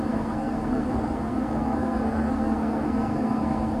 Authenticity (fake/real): fake